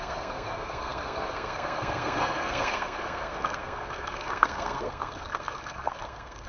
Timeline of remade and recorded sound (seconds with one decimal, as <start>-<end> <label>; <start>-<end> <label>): 0.0-6.5 remade